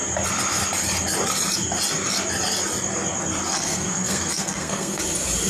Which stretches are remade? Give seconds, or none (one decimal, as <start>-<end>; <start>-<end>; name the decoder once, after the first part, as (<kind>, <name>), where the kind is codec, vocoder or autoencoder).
3.5-5.0 (codec, SNAC)